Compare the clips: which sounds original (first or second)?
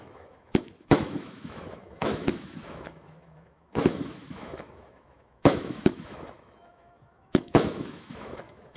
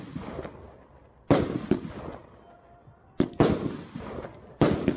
second